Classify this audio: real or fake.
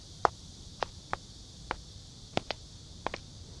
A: real